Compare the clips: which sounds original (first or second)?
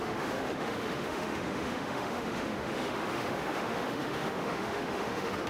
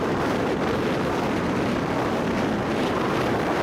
second